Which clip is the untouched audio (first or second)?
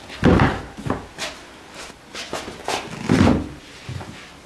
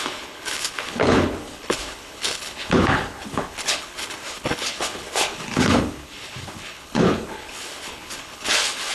first